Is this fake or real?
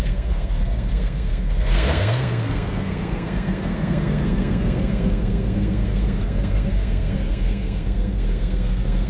fake